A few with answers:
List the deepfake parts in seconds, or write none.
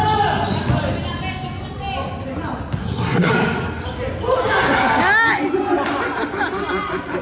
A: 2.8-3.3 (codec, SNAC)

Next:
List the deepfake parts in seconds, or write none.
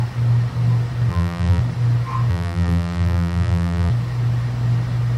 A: 1.1-1.6 (vocoder, BigVGAN v2); 2.3-3.9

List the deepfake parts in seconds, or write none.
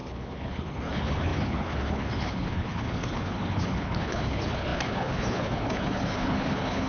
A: 0.0-6.9 (codec, HILCodec)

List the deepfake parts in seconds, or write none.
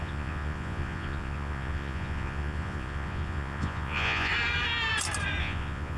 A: 0.0-4.3 (vocoder, Vocos); 5.4-6.0